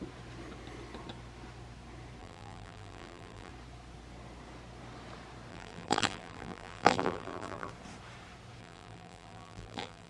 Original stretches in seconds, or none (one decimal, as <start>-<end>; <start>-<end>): 0.0-2.2; 3.5-5.5; 7.7-8.6